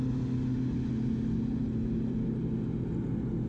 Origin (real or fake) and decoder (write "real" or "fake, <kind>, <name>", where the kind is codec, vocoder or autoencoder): real